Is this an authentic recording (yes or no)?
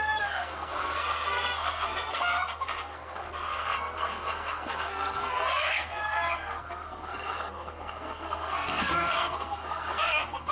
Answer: no